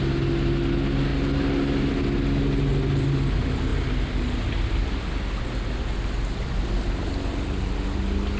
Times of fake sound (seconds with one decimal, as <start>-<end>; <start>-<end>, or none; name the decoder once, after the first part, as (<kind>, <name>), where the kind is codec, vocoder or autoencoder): none